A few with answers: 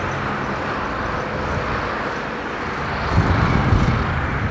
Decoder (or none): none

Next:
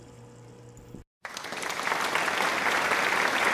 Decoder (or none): none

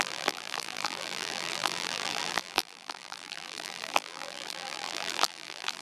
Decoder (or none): vocoder, BigVGAN v2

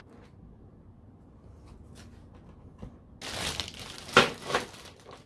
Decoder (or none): none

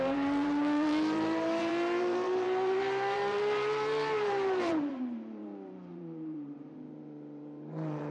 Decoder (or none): vocoder, BigVGAN v2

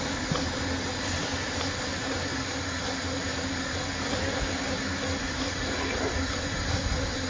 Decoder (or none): none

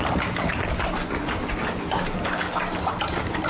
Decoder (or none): none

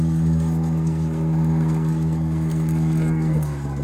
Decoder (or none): codec, SNAC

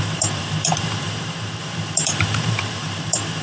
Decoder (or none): vocoder, BigVGAN v2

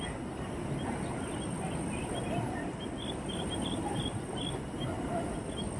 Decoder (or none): none